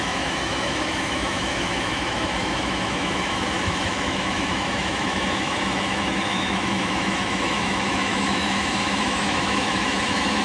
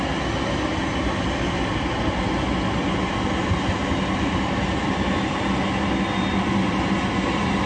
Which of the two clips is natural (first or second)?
second